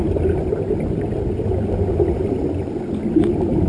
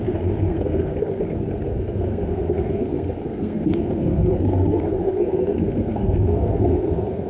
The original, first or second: first